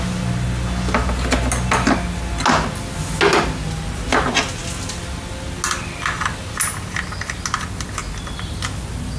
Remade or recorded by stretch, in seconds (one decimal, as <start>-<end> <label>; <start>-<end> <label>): 0.0-9.2 recorded